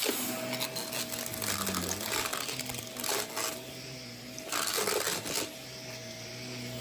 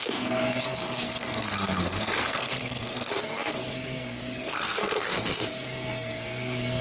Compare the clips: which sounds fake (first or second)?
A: second